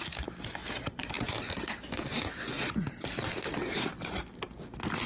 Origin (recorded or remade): recorded